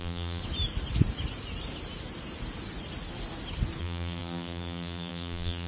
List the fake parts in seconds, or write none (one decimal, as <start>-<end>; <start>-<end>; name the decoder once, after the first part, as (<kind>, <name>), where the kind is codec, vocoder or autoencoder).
0.0-0.4 (vocoder, BigVGAN v2); 3.8-5.7